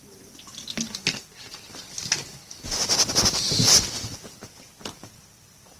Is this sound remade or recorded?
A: recorded